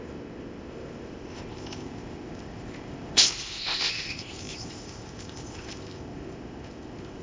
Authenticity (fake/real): fake